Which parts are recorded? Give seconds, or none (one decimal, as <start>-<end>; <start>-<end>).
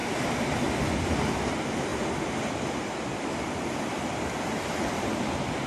0.6-5.7